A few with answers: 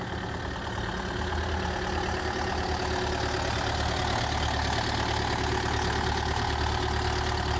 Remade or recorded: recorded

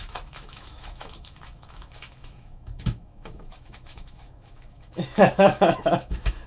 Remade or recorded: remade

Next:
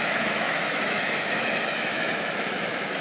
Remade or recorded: remade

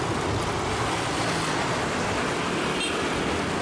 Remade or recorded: recorded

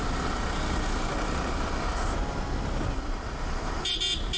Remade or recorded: recorded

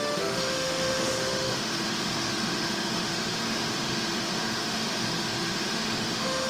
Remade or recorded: remade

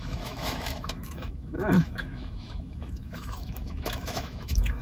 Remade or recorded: remade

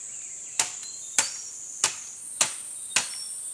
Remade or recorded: recorded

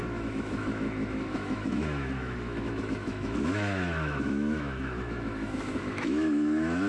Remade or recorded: remade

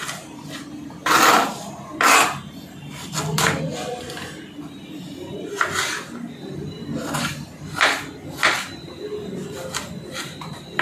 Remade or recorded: recorded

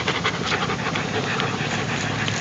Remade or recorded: recorded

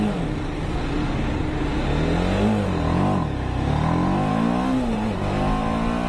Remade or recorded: recorded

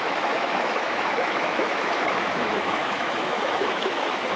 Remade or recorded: remade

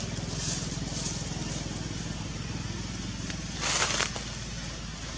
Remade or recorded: recorded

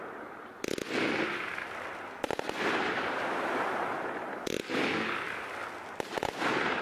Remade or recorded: recorded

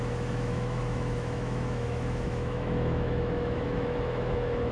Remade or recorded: remade